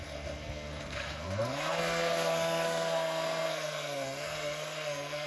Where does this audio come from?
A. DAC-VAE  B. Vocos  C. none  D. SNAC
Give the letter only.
D